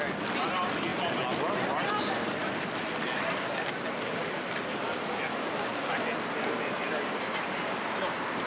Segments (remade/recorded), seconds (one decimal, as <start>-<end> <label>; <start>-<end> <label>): 0.0-8.5 recorded